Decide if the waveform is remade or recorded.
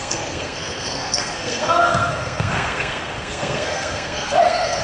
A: remade